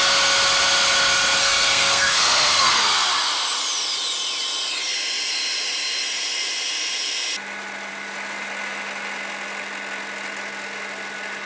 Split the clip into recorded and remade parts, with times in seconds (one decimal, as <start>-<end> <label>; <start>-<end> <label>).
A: 0.0-1.4 recorded; 1.4-3.1 remade; 3.1-11.5 recorded